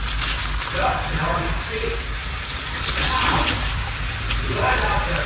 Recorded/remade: recorded